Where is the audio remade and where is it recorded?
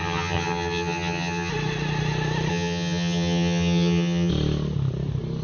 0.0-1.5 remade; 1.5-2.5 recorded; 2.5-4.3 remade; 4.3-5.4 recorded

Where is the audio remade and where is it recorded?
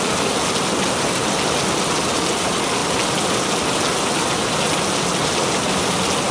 0.0-6.3 recorded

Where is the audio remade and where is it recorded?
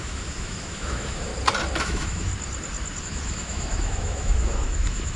0.0-1.3 remade; 1.3-1.8 recorded; 1.8-2.3 remade; 2.3-3.0 recorded; 3.0-5.2 remade